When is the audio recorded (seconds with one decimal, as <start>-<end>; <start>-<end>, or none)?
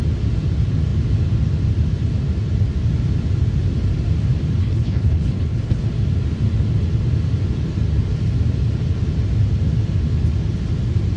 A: 0.0-4.6; 5.9-11.2